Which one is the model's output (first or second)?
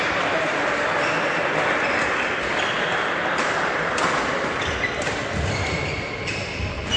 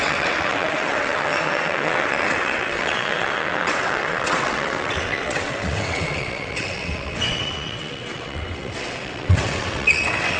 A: second